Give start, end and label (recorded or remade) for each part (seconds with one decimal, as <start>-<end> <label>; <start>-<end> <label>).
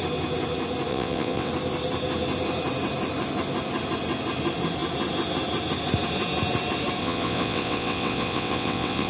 0.0-0.9 recorded; 0.9-1.5 remade; 1.5-7.0 recorded; 7.0-9.1 remade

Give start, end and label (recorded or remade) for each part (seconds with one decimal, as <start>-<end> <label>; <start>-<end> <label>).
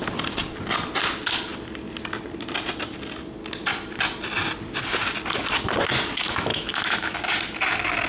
0.0-6.5 recorded; 6.5-7.2 remade; 7.2-8.1 recorded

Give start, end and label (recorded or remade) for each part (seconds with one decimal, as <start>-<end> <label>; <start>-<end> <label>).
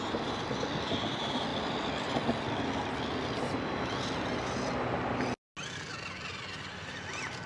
0.0-7.5 recorded